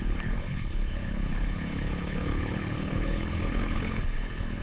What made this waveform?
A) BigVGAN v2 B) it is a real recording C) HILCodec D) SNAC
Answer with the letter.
C